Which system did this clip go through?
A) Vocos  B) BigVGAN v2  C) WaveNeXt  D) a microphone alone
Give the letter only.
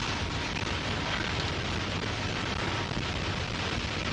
B